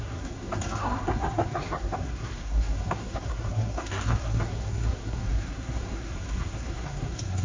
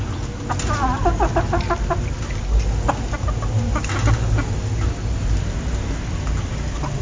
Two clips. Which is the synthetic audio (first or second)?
first